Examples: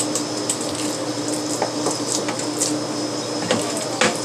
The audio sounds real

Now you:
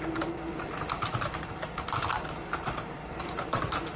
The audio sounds fake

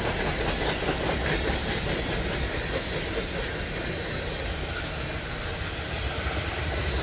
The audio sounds real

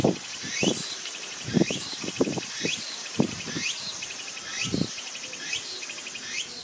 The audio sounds fake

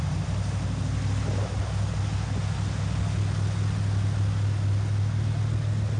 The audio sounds real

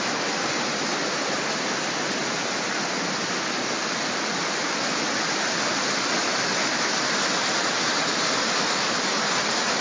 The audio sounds real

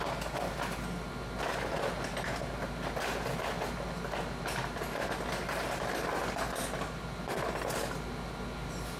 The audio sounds real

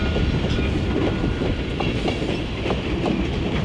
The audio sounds fake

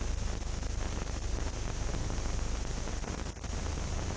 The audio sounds real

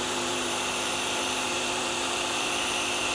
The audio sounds fake